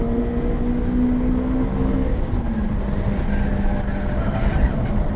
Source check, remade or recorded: recorded